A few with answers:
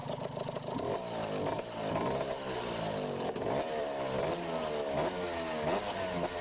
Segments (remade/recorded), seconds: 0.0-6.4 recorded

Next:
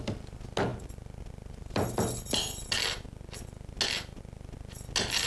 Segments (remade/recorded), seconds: 0.0-5.3 recorded